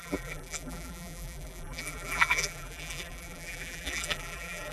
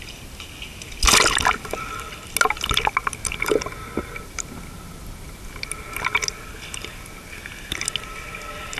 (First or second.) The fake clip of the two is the first